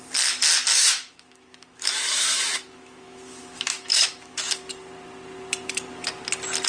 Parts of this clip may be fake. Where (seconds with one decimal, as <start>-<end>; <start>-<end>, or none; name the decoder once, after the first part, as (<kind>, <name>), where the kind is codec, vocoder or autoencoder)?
0.7-4.7 (autoencoder, DAC-VAE)